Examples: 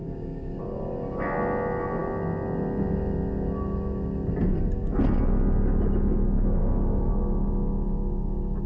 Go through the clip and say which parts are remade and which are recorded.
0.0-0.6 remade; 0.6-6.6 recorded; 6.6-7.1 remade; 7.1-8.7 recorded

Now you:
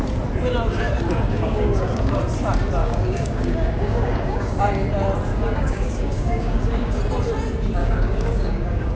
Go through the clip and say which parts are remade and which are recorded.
0.0-1.3 recorded; 1.3-2.1 remade; 2.1-2.8 recorded; 2.8-4.6 remade; 4.6-5.3 recorded; 5.3-7.0 remade; 7.0-7.8 recorded; 7.8-9.0 remade

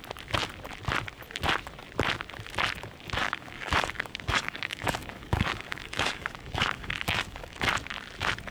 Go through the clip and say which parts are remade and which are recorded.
0.0-3.2 recorded; 3.2-7.7 remade; 7.7-8.5 recorded